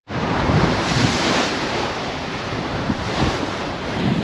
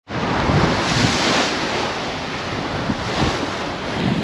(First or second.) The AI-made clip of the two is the first